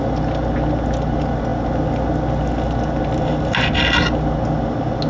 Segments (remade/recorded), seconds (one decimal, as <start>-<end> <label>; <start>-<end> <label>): 0.0-5.1 recorded

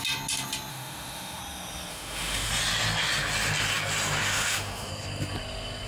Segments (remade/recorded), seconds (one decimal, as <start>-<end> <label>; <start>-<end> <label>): 0.0-0.7 recorded; 0.7-1.4 remade; 1.4-1.9 recorded; 1.9-2.5 remade; 2.5-4.2 recorded; 4.2-4.9 remade; 4.9-5.9 recorded

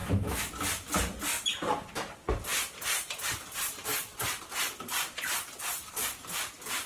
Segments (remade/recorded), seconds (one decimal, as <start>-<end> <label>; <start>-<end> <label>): 0.0-0.5 remade; 0.5-6.9 recorded

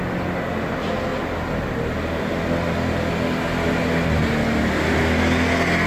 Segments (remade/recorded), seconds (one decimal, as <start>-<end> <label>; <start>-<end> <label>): 0.0-5.9 recorded